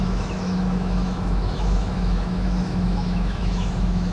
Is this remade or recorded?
remade